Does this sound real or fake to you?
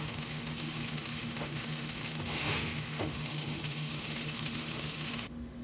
fake